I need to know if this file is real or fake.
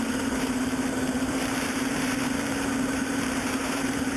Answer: fake